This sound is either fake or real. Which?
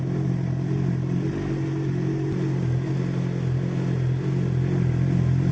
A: real